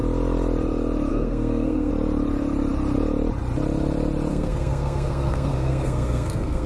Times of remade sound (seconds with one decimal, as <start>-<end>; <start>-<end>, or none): 1.1-1.9; 4.3-6.7